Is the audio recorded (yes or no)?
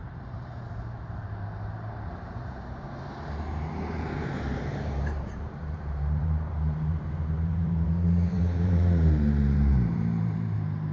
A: no